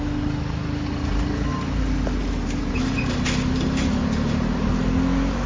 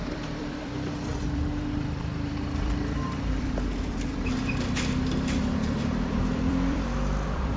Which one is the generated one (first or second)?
second